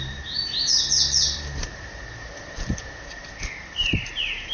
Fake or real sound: fake